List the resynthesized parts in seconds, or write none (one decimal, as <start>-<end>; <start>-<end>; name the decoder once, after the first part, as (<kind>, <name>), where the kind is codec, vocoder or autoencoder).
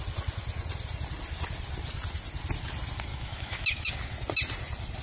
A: 3.1-3.9 (autoencoder, DAC-VAE)